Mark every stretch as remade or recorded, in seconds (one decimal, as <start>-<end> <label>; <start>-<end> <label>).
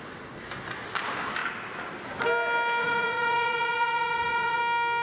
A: 0.0-2.8 recorded; 2.8-4.6 remade; 4.6-5.0 recorded